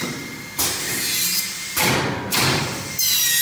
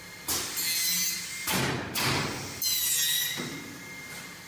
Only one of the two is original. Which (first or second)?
second